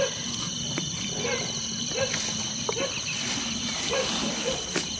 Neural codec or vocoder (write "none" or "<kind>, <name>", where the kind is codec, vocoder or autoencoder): none